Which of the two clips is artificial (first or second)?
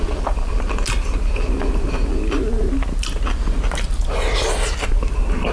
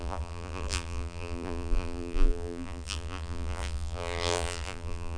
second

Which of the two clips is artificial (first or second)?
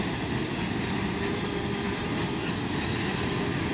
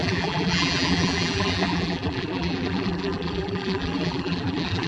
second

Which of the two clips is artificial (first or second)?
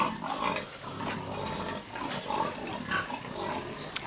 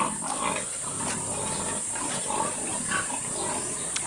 second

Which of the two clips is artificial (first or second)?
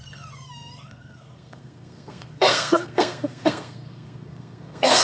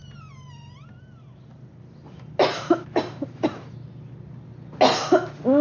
first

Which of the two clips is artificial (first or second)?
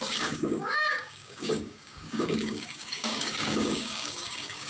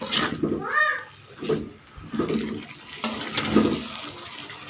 first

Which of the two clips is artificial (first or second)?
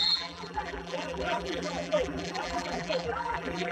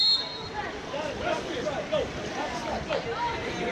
first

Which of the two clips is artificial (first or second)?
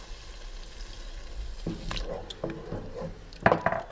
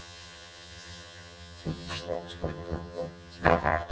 second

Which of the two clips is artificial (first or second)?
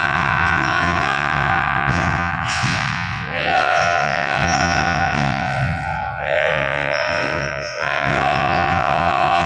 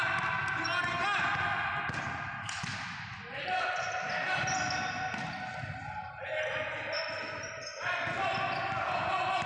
first